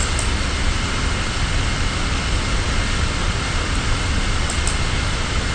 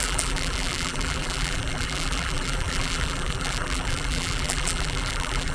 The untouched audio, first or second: first